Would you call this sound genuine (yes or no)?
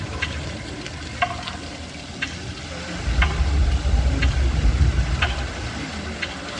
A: yes